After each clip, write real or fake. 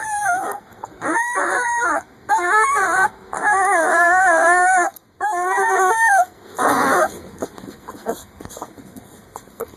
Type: fake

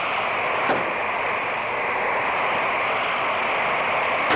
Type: real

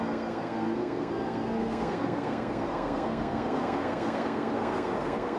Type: fake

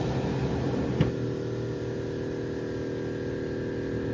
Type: real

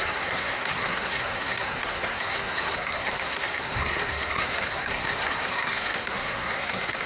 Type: fake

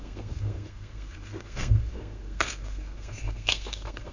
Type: fake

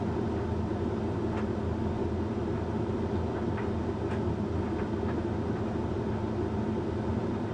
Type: real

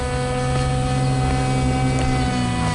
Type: real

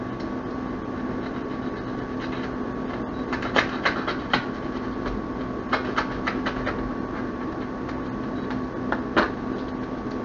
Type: real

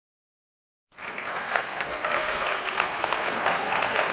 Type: fake